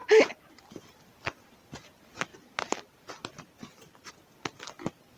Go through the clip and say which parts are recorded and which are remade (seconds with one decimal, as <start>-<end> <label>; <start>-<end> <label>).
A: 0.0-0.6 remade; 0.6-2.3 recorded; 2.3-4.1 remade; 4.1-5.2 recorded